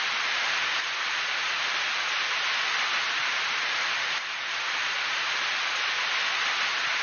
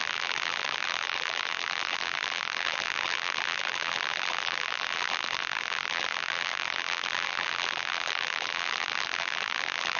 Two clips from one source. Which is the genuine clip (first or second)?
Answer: first